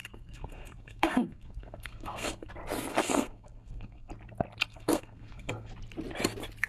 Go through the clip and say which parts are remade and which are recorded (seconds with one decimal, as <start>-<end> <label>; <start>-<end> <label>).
0.0-2.5 remade; 2.5-2.9 recorded; 2.9-4.1 remade; 4.1-4.7 recorded; 4.7-5.7 remade; 5.7-6.7 recorded